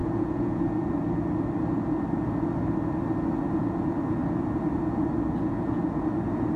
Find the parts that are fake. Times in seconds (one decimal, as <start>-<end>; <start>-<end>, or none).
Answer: 0.0-0.6